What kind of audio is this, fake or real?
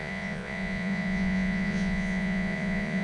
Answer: fake